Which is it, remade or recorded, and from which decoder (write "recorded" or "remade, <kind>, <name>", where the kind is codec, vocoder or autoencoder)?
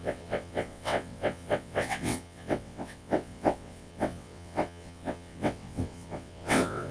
remade, vocoder, WaveNeXt